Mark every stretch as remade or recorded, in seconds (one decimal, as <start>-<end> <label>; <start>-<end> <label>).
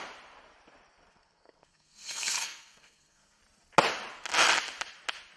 0.0-1.1 recorded; 1.1-3.4 remade; 3.4-5.4 recorded